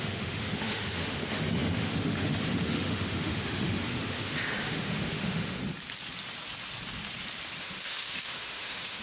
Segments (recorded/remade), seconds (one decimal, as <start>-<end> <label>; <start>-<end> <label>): 0.0-5.6 remade; 5.6-7.6 recorded; 7.6-9.0 remade

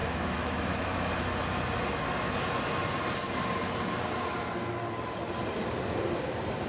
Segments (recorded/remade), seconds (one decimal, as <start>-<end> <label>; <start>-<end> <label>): 0.0-1.1 remade; 1.1-6.7 recorded

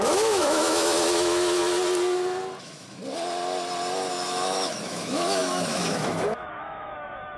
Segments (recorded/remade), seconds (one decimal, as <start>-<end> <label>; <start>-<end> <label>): 0.0-1.6 remade; 1.6-2.6 recorded; 2.6-3.0 remade; 3.0-4.1 recorded; 4.1-7.4 remade

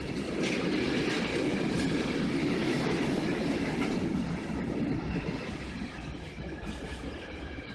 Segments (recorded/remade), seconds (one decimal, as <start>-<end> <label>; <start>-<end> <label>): 0.0-2.4 recorded; 2.4-3.7 remade; 3.7-7.7 recorded

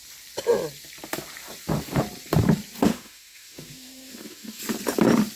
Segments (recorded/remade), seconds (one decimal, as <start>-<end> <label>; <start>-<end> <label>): 0.0-2.9 recorded; 2.9-4.6 remade; 4.6-5.4 recorded